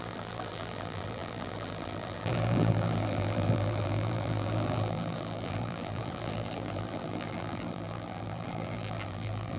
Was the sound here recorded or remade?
remade